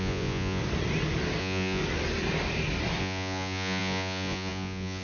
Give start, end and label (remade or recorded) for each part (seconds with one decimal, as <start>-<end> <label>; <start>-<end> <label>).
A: 0.0-0.6 remade; 0.6-1.4 recorded; 1.4-1.8 remade; 1.8-3.0 recorded; 3.0-5.0 remade